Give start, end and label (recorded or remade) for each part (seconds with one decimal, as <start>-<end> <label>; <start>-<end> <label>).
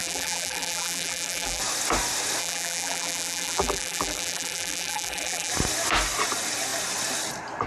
0.0-1.6 remade; 1.6-2.4 recorded; 2.4-5.5 remade; 5.5-7.7 recorded